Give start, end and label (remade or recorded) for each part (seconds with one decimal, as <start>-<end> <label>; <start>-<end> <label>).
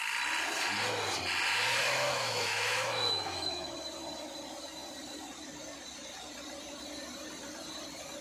0.0-1.7 recorded; 1.7-3.7 remade; 3.7-8.2 recorded